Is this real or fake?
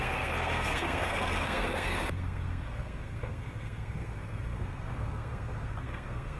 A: fake